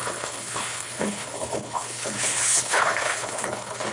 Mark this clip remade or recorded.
remade